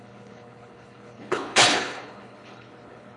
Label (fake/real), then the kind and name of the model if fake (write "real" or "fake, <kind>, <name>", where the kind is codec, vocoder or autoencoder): fake, codec, HILCodec